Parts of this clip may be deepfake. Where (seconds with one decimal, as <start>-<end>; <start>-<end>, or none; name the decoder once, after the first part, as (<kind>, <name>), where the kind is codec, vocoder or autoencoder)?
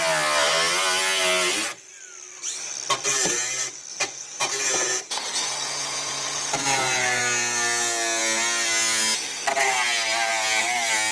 3.9-7.2 (vocoder, Vocos)